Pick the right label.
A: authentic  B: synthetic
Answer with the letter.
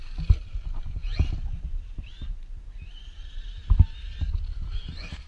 A